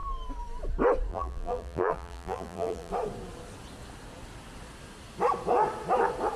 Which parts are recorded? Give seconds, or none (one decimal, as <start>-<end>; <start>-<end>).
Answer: 0.0-1.1; 2.9-6.4